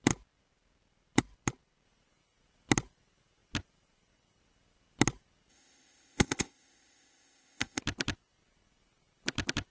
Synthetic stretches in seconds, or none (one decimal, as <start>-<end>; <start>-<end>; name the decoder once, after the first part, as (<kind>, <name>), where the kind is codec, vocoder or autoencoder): 5.5-7.8 (codec, ZipCodec)